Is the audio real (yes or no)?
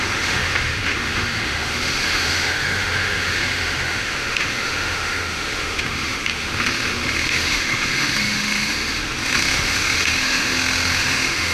no